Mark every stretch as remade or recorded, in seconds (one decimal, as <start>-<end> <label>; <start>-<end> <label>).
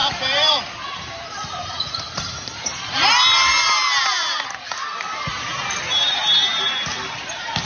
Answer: 0.0-3.5 remade; 3.5-5.3 recorded; 5.3-6.2 remade; 6.2-7.7 recorded